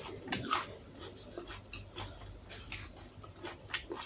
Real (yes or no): yes